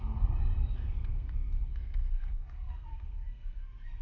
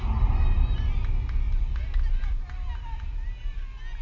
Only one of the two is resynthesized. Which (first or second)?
first